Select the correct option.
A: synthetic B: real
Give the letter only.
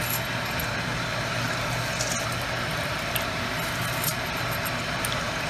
B